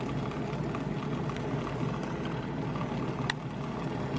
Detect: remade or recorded recorded